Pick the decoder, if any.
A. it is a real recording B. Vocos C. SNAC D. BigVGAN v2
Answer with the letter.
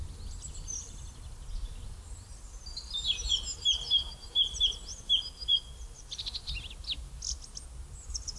A